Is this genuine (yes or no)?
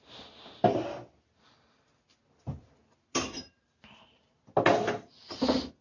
yes